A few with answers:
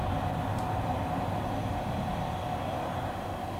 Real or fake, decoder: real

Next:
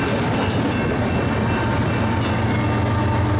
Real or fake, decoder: real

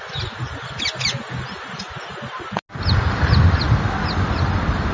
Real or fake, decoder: real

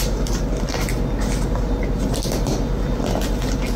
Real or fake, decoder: real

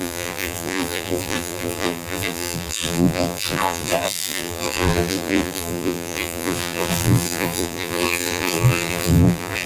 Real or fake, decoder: fake, vocoder, BigVGAN v2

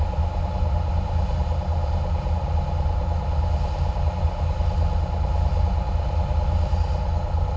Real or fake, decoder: real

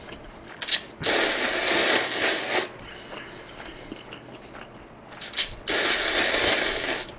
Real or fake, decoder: real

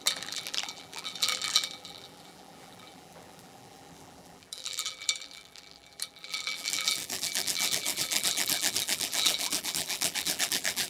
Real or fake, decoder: fake, vocoder, BigVGAN v2